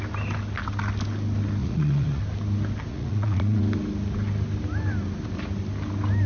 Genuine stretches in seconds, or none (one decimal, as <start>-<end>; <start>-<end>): 0.0-1.6; 2.2-2.9; 3.6-6.3